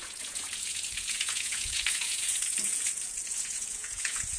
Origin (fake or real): fake